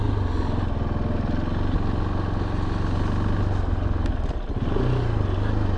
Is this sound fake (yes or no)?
no